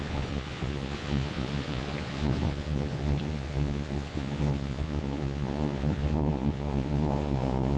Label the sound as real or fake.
fake